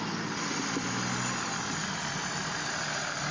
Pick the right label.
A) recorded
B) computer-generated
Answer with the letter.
A